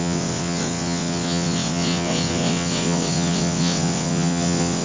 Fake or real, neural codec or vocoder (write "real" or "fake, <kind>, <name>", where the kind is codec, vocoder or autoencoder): fake, vocoder, WaveNeXt